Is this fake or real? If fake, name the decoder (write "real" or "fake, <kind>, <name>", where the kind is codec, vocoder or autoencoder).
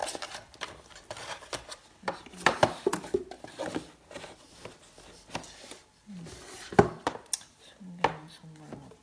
real